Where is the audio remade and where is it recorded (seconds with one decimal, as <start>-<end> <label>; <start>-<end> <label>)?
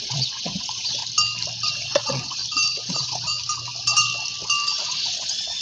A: 0.0-1.0 remade; 1.0-1.7 recorded; 1.7-2.4 remade; 2.4-2.9 recorded; 2.9-3.3 remade; 3.3-4.8 recorded; 4.8-5.6 remade